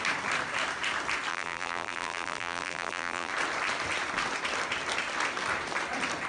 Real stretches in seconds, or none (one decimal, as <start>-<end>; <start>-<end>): 0.0-1.3; 3.3-6.3